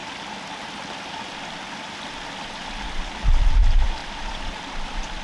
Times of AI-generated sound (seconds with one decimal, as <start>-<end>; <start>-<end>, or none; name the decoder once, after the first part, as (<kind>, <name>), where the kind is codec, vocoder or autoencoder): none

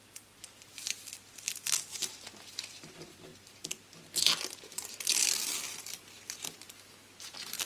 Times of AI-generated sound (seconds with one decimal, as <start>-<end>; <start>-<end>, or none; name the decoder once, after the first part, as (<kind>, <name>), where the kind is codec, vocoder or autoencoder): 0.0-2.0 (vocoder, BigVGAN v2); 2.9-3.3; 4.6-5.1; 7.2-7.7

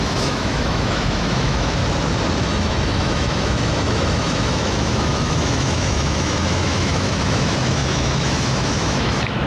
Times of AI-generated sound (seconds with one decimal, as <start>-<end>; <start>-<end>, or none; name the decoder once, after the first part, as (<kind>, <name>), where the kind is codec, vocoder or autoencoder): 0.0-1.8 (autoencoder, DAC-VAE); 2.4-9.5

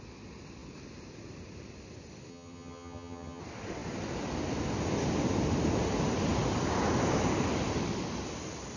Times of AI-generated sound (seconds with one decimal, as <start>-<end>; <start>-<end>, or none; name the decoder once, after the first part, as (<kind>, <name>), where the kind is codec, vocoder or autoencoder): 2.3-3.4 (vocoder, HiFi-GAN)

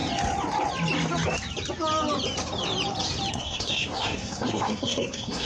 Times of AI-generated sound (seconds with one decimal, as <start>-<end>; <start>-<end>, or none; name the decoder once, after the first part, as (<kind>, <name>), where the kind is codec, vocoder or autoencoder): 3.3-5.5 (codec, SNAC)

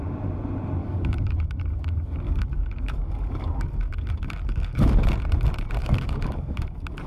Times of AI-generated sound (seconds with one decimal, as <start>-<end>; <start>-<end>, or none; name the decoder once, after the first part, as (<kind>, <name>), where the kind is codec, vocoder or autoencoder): 0.8-4.9 (codec, DAC); 5.8-7.1

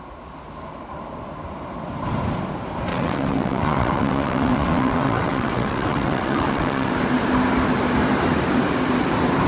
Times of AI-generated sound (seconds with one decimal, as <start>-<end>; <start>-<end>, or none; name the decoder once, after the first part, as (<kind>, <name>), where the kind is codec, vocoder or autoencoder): 2.9-6.9 (vocoder, WaveNeXt)

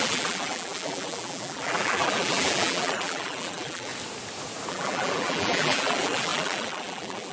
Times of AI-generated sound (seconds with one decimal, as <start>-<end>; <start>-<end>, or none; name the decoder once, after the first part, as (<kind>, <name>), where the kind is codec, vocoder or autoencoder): 0.0-3.9 (vocoder, BigVGAN v2); 4.7-7.3